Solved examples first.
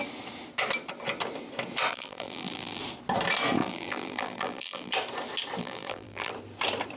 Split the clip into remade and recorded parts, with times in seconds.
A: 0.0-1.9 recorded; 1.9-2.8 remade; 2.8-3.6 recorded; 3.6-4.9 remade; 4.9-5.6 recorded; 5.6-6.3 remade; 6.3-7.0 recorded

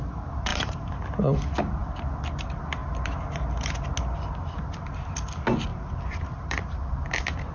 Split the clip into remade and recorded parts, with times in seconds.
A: 0.0-0.5 recorded; 0.5-1.0 remade; 1.0-5.7 recorded; 5.7-6.9 remade; 6.9-7.5 recorded